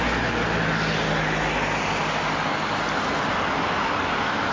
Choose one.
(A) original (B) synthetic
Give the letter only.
A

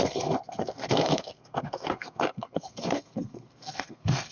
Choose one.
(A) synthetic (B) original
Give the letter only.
A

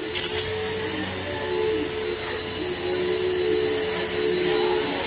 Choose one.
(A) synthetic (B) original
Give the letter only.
B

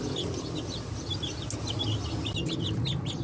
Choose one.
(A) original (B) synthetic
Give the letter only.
A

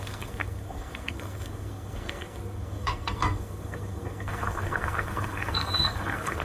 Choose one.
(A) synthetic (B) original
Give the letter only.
A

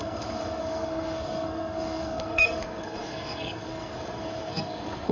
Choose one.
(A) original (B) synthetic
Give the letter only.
B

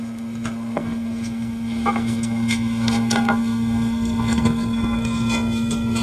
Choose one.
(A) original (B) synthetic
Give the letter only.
B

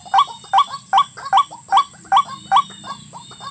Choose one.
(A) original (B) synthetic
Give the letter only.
A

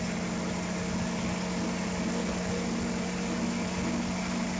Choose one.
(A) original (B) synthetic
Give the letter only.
A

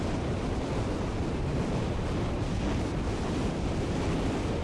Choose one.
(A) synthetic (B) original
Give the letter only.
B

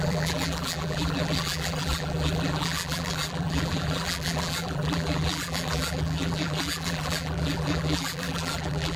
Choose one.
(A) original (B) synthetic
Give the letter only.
B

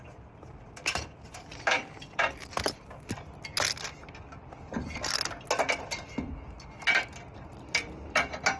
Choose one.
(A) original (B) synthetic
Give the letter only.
A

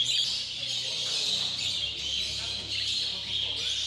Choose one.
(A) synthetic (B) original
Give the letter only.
B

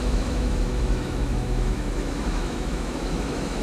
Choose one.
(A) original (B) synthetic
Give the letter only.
B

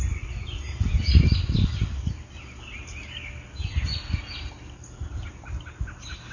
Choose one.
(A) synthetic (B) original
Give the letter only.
B